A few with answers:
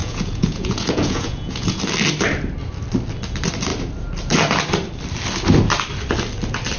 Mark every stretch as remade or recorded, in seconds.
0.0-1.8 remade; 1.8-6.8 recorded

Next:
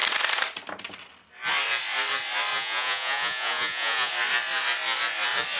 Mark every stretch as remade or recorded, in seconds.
0.0-2.5 recorded; 2.5-4.1 remade; 4.1-5.6 recorded

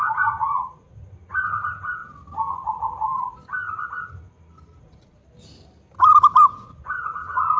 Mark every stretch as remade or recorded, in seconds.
0.0-2.0 remade; 2.0-2.5 recorded; 2.5-3.4 remade; 3.4-4.8 recorded; 4.8-5.2 remade; 5.2-6.4 recorded; 6.4-7.6 remade

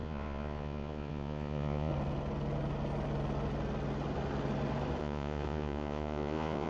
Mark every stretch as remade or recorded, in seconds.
0.0-1.9 remade; 1.9-5.0 recorded; 5.0-6.7 remade